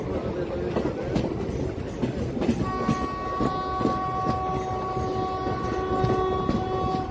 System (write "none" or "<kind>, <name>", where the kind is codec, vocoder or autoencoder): none